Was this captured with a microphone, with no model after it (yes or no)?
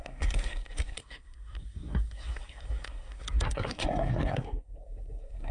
no